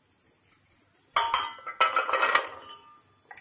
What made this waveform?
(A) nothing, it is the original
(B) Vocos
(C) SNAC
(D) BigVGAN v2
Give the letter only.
A